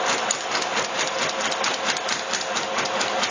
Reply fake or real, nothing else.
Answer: real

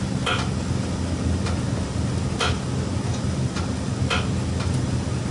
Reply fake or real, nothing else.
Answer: real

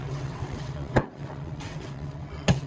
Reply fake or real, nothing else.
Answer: fake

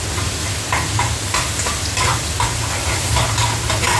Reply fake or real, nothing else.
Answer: real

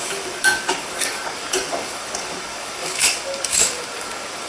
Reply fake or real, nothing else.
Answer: fake